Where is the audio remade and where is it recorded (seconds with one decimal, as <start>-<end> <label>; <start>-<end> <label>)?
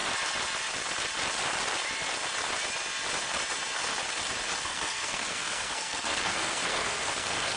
0.0-4.6 recorded; 4.6-7.6 remade